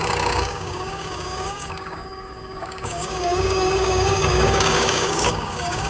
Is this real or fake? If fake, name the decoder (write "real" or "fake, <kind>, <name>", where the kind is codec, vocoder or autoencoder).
fake, codec, DAC